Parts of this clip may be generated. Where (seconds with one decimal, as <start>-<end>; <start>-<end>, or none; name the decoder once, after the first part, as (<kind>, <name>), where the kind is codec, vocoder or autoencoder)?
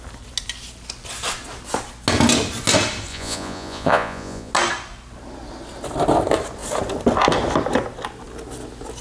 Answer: 3.1-4.5 (vocoder, Vocos)